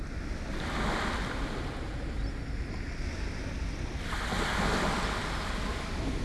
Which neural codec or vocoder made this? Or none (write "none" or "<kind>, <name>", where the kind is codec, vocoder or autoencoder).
none